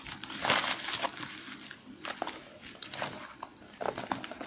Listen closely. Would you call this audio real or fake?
real